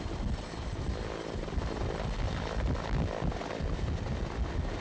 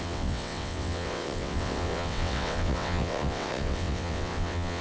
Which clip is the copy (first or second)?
second